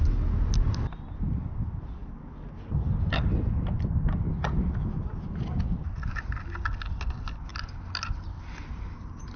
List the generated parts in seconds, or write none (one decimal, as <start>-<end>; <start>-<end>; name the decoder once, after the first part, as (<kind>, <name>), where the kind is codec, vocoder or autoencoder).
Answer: none

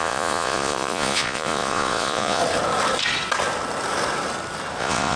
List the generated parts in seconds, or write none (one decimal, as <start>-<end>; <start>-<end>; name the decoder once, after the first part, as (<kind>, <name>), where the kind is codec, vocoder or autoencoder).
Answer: 0.0-2.4 (vocoder, Vocos); 4.8-5.2

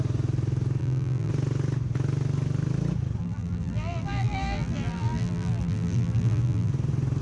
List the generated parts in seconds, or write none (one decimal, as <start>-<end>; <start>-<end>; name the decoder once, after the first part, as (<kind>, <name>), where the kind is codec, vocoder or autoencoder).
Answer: 0.8-1.3 (vocoder, BigVGAN v2); 3.2-6.7

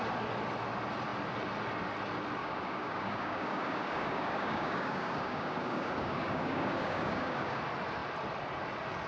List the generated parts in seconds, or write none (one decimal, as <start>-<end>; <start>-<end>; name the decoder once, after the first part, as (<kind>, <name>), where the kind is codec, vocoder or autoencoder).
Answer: 2.4-7.6 (codec, DAC)